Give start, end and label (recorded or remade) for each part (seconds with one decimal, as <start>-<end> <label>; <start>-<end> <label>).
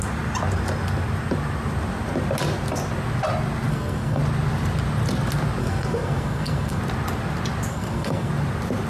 0.0-3.7 recorded; 3.7-4.2 remade; 4.2-5.6 recorded; 5.6-6.8 remade; 6.8-7.7 recorded; 7.7-8.3 remade; 8.3-8.9 recorded